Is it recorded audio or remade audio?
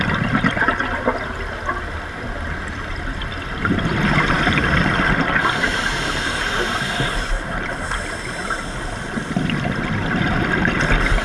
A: recorded